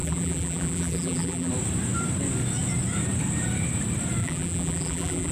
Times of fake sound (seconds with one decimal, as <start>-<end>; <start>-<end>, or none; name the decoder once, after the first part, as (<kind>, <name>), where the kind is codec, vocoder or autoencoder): 0.0-1.5 (vocoder, BigVGAN v2); 4.2-5.3